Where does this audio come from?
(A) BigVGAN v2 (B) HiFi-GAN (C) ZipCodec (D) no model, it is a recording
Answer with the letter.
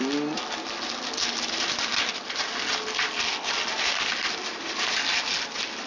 D